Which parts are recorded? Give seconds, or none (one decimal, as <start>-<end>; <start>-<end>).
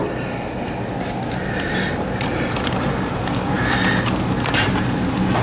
0.0-5.4